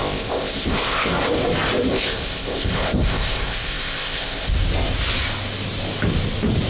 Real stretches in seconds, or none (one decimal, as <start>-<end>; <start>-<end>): 1.1-1.9; 4.5-6.7